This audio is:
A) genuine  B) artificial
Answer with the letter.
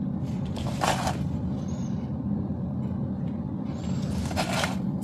A